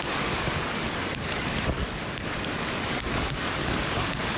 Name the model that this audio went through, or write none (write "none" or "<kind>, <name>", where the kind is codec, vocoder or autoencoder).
codec, DAC